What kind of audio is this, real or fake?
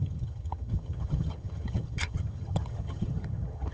fake